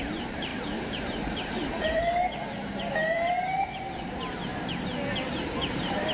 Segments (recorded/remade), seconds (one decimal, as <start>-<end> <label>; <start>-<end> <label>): 0.0-4.5 remade; 4.5-5.3 recorded; 5.3-6.1 remade